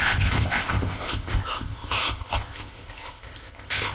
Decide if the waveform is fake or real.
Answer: fake